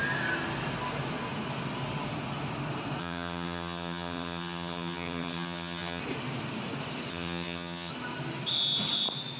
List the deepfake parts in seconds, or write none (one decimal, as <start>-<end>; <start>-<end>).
3.0-6.0; 7.1-7.9